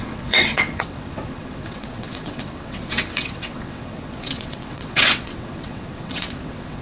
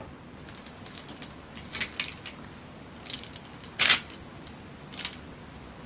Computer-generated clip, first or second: first